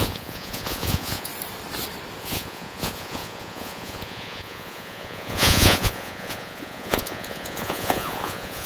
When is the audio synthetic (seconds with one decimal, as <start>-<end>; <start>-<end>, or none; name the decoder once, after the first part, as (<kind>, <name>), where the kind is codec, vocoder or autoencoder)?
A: 0.0-1.3 (vocoder, Vocos); 2.2-8.7